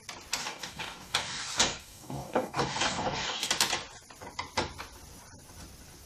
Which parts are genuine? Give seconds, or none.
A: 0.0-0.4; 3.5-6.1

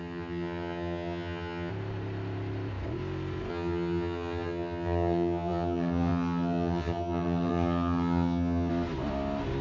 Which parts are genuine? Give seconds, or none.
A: 1.7-3.5; 8.7-9.6

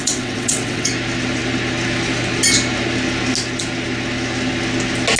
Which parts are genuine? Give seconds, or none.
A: 0.9-5.2